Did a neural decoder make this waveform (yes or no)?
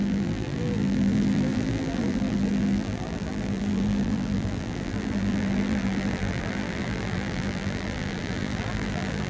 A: yes